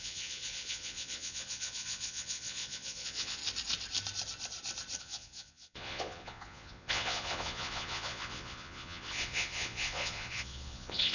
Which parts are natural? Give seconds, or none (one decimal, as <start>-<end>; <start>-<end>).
3.4-5.0